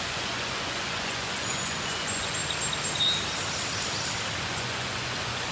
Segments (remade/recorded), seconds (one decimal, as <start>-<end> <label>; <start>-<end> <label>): 0.0-2.4 remade; 2.4-4.4 recorded; 4.4-5.5 remade